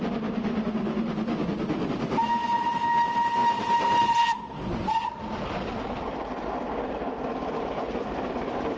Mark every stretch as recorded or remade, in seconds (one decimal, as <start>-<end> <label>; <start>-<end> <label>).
0.0-8.8 recorded